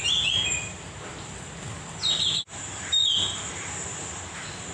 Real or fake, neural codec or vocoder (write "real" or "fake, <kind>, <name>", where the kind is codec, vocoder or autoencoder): real